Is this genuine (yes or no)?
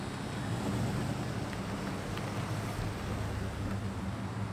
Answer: yes